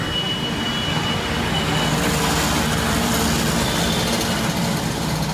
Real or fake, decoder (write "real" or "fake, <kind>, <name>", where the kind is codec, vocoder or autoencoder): real